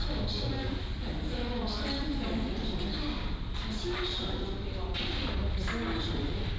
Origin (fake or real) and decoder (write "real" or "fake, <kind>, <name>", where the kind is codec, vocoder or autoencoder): real